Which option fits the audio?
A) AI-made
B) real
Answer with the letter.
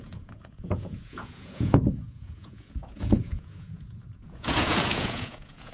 A